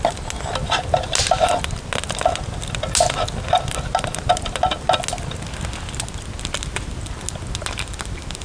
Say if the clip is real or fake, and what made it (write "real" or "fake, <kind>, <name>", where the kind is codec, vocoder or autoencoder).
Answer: real